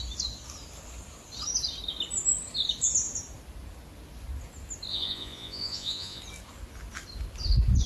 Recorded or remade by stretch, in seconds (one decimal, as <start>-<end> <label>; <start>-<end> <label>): 0.0-4.9 recorded; 4.9-6.2 remade; 6.2-7.9 recorded